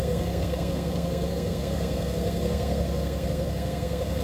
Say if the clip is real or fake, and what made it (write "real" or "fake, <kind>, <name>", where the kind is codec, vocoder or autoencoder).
fake, codec, SNAC